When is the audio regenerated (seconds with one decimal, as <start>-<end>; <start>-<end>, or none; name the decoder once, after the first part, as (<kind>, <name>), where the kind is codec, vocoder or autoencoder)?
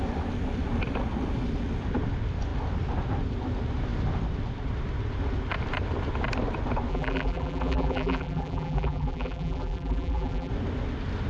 6.9-10.5 (vocoder, BigVGAN v2)